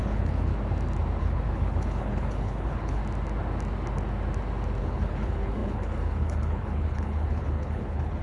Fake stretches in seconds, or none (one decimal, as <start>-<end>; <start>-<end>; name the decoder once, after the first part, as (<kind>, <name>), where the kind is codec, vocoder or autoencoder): 0.0-0.5 (codec, HILCodec); 1.2-3.0; 4.8-8.2